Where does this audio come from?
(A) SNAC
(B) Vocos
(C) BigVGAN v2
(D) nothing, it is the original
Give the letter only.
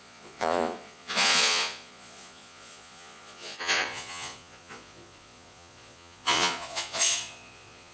B